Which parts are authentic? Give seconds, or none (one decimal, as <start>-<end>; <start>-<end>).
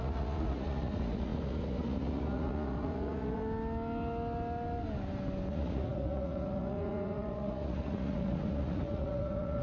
3.4-5.5